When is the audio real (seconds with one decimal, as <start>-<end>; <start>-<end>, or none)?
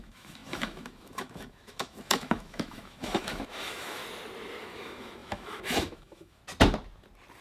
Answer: 4.0-4.6; 6.4-7.4